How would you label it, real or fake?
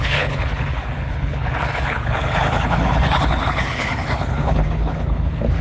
fake